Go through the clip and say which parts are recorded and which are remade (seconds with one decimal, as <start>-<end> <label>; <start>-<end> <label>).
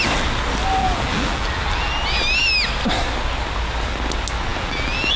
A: 0.0-0.8 recorded; 0.8-1.9 remade; 1.9-4.5 recorded; 4.5-5.2 remade